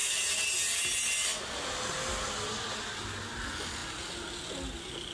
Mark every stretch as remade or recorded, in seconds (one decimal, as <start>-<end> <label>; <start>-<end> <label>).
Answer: 0.0-0.5 remade; 0.5-5.1 recorded